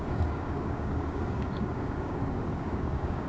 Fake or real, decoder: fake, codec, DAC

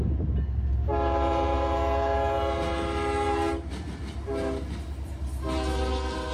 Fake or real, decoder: real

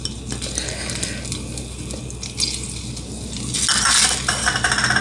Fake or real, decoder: real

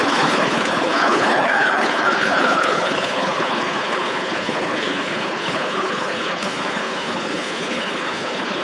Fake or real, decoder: fake, codec, HILCodec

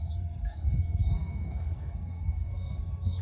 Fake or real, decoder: fake, codec, SNAC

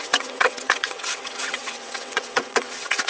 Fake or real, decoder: fake, vocoder, WaveNeXt